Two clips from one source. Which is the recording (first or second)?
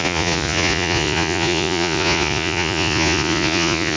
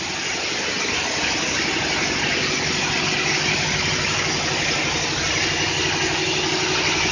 second